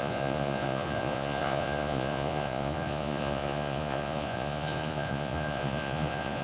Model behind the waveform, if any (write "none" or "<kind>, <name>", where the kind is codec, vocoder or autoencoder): vocoder, Vocos